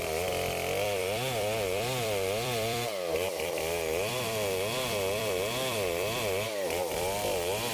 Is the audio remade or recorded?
remade